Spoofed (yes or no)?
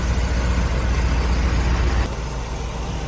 no